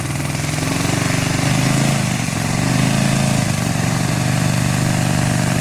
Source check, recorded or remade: recorded